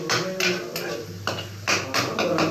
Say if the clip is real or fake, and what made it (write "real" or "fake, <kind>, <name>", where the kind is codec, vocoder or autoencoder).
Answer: real